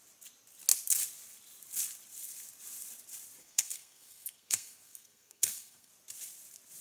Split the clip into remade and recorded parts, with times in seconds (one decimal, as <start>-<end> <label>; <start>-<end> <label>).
0.0-3.4 recorded; 3.4-5.9 remade; 5.9-6.8 recorded